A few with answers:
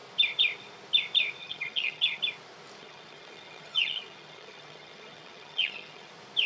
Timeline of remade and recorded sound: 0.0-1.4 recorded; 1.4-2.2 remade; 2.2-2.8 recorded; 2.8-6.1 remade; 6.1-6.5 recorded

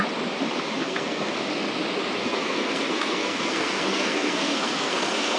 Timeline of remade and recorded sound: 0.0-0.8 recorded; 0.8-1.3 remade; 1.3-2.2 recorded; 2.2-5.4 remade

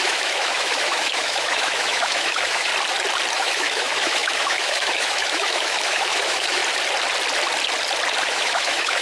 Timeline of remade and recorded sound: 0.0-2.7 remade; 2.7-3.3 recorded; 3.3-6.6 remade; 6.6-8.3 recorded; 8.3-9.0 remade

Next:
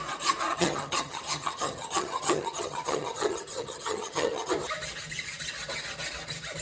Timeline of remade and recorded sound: 0.0-0.5 recorded; 0.5-4.5 remade; 4.5-6.6 recorded